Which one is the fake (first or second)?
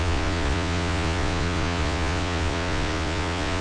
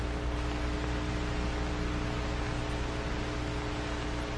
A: first